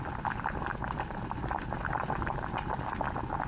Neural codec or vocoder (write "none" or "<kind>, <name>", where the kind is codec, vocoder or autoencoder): none